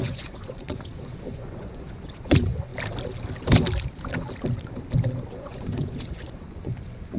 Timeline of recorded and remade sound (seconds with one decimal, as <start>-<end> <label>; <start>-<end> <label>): 0.0-2.7 remade; 2.7-5.3 recorded; 5.3-7.2 remade